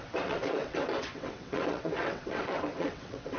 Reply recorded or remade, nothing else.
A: remade